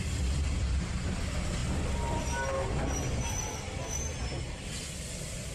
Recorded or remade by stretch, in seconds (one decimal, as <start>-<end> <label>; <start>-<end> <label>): 0.0-5.5 recorded